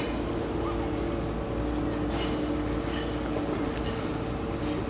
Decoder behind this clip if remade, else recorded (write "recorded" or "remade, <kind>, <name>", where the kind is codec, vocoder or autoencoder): recorded